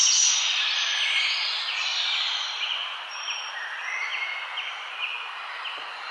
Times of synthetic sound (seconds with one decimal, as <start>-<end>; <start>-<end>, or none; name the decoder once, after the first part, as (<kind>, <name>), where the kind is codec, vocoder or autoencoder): 1.9-4.1 (vocoder, BigVGAN v2)